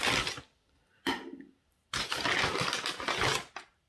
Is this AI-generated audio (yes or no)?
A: no